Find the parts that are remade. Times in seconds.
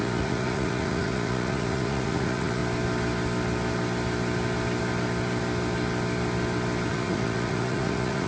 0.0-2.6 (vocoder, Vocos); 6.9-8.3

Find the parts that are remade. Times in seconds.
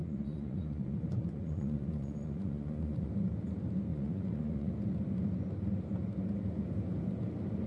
0.0-3.1 (vocoder, Vocos); 3.9-4.7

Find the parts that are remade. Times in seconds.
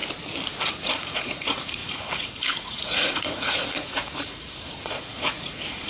0.7-5.9 (vocoder, Vocos)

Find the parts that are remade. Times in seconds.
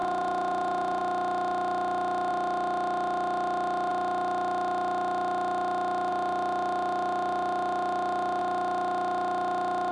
0.0-1.0 (vocoder, Vocos)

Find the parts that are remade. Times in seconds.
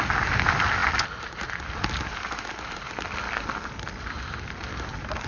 none